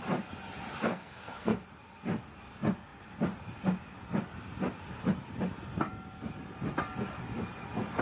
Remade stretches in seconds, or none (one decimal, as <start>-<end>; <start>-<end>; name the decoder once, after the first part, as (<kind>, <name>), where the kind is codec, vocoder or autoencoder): 0.9-1.6 (codec, SNAC)